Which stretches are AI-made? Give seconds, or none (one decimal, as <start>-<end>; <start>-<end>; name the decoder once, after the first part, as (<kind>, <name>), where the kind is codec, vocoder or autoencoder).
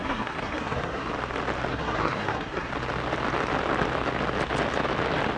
0.0-1.1 (codec, SNAC); 1.7-2.7